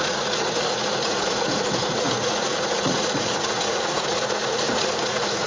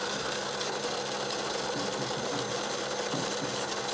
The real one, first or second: second